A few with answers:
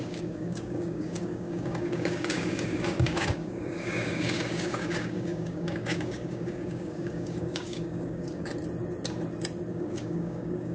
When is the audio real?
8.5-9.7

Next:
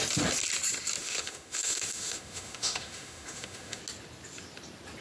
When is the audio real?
0.0-1.0; 3.8-5.0

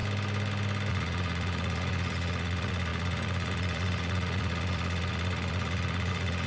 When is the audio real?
0.0-0.9

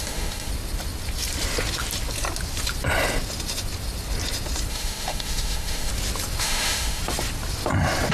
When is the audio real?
0.5-4.7; 5.9-6.4; 7.0-8.1

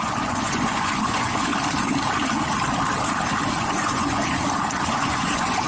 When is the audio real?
1.5-3.5; 4.2-4.9

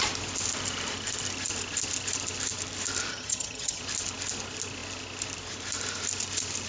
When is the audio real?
0.0-3.1; 3.8-6.7

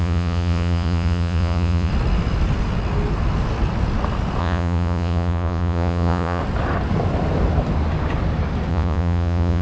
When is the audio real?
1.9-4.4; 6.4-8.7

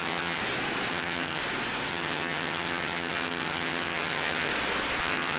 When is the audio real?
0.4-0.9; 1.4-1.9; 4.5-5.0